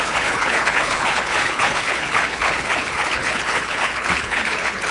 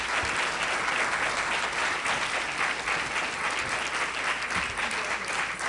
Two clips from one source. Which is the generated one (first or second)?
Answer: first